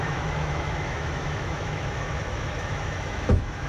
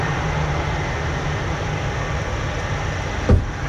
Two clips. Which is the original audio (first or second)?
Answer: second